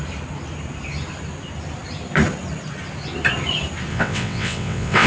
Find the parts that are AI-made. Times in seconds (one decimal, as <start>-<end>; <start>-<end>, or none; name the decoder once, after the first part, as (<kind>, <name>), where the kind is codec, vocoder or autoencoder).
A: 3.9-5.1 (vocoder, WaveNeXt)

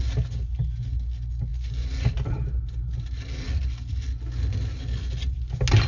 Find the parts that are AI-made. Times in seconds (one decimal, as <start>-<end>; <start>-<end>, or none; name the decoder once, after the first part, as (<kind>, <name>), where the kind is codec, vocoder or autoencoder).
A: none

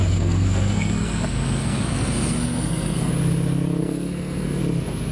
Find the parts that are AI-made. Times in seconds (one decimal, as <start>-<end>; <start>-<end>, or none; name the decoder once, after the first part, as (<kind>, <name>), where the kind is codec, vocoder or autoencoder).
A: 0.0-3.1 (codec, SNAC); 3.8-4.6

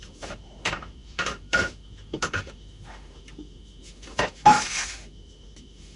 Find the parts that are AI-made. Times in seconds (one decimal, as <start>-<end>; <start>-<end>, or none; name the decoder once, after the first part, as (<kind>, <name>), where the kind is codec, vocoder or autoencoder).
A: 0.0-6.0 (autoencoder, DAC-VAE)